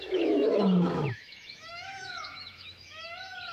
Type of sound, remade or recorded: remade